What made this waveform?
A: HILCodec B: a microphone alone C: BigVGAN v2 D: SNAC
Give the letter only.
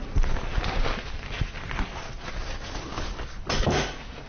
B